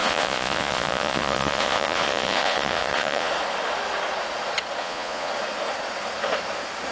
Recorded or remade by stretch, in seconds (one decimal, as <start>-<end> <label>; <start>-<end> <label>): 0.0-3.3 remade; 3.3-4.8 recorded; 4.8-5.3 remade; 5.3-6.9 recorded